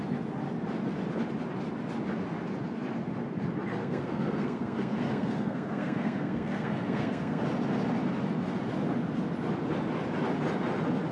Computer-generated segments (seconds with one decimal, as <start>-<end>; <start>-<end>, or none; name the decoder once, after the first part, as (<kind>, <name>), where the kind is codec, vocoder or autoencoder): 3.8-7.4 (codec, SNAC)